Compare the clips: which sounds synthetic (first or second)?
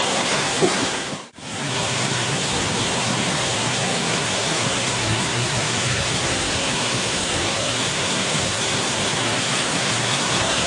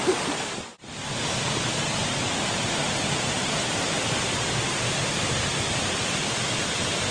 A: first